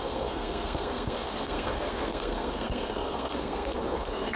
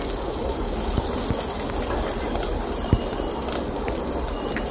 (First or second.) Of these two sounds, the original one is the second